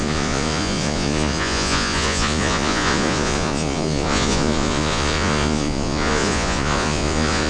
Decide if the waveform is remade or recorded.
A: remade